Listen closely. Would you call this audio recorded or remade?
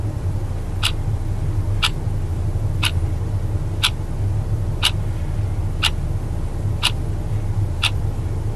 recorded